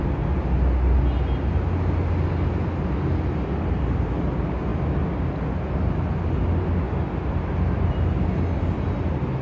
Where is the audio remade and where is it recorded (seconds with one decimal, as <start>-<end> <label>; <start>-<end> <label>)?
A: 0.0-9.4 recorded